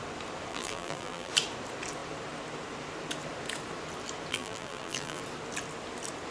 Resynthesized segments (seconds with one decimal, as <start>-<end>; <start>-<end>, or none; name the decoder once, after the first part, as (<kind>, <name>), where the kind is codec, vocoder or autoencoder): 0.5-1.3 (vocoder, BigVGAN v2); 4.3-5.2

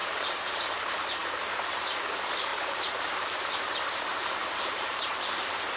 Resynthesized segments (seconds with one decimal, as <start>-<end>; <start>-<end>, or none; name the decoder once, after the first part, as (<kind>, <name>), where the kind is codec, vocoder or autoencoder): 0.0-0.6 (vocoder, BigVGAN v2); 2.5-3.4; 4.1-5.1

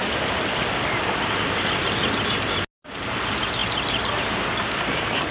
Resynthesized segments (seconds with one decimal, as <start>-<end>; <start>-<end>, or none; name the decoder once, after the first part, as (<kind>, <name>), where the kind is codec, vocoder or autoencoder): none